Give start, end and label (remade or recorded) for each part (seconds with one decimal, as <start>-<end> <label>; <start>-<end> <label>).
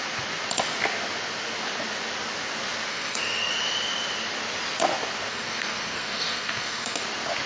0.0-2.9 recorded; 2.9-3.5 remade; 3.5-5.3 recorded; 5.3-7.0 remade; 7.0-7.5 recorded